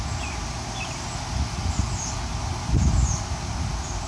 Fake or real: real